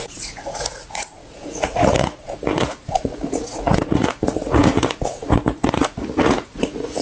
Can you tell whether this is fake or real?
fake